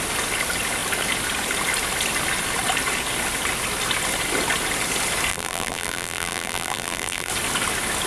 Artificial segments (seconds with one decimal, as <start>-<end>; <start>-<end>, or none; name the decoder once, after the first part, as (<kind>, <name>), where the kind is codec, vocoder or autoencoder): 5.3-7.3 (vocoder, BigVGAN v2)